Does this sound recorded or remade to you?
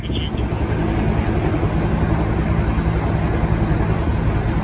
recorded